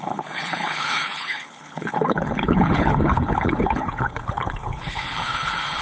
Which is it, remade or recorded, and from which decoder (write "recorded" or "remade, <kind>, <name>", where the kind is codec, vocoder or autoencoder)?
remade, codec, HILCodec